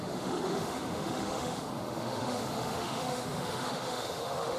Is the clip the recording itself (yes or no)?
no